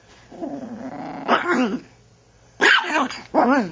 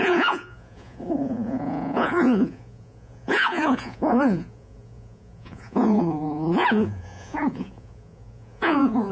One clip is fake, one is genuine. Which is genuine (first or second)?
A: first